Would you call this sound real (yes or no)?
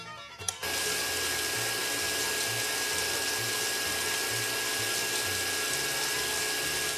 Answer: yes